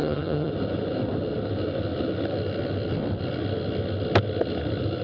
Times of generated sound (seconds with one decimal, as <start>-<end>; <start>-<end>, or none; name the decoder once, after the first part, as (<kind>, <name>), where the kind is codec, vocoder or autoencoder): 0.0-0.5 (vocoder, HiFi-GAN)